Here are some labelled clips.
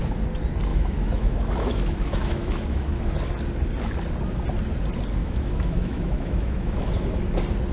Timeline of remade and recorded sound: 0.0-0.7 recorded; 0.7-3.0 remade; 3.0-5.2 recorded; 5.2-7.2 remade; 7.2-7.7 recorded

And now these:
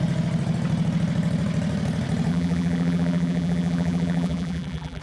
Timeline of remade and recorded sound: 0.0-2.3 recorded; 2.3-5.0 remade

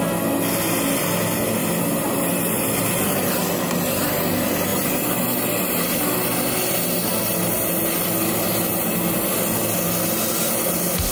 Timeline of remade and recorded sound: 0.0-1.6 recorded; 1.6-3.0 remade; 3.0-11.1 recorded

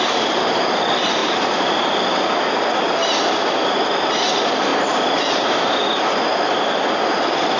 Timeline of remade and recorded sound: 0.0-1.2 recorded; 1.2-2.3 remade; 2.3-4.7 recorded; 4.7-5.7 remade; 5.7-7.6 recorded

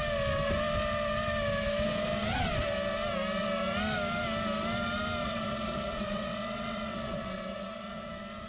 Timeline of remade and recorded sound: 0.0-5.2 recorded; 5.2-8.1 remade; 8.1-8.5 recorded

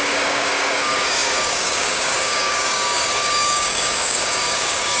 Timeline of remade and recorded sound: 0.0-5.0 remade

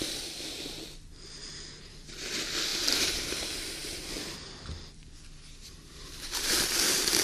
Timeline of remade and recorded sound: 0.0-2.7 recorded; 2.7-3.2 remade; 3.2-5.6 recorded; 5.6-6.5 remade; 6.5-7.2 recorded

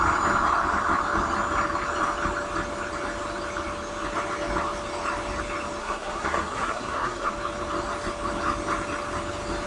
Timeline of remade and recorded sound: 0.0-5.8 recorded; 5.8-7.3 remade; 7.3-9.7 recorded